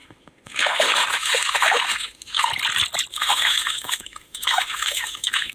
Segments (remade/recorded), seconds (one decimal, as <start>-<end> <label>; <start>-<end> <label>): 0.0-2.5 remade; 2.5-3.1 recorded; 3.1-5.5 remade